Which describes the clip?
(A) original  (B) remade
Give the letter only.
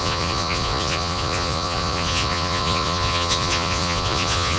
B